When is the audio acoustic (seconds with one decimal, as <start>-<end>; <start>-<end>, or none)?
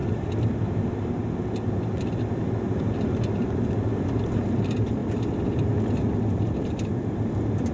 0.0-4.5